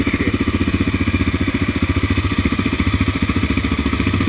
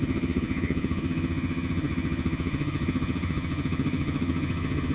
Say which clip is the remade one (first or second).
second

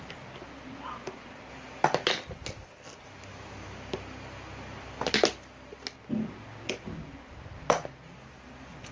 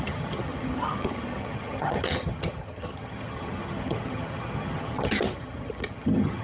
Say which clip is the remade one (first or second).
second